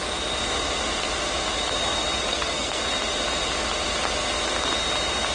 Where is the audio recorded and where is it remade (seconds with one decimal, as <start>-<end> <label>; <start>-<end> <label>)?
0.0-2.3 recorded; 2.3-2.8 remade; 2.8-5.3 recorded